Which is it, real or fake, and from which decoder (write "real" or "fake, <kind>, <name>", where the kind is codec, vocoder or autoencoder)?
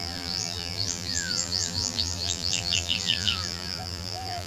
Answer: fake, vocoder, BigVGAN v2